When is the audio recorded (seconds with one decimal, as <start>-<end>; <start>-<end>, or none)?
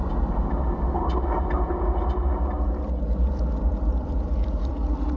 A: 0.0-3.2; 4.7-5.2